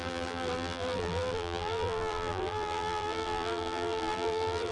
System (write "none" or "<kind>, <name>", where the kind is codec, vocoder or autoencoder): vocoder, BigVGAN v2